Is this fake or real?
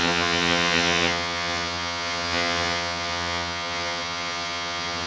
fake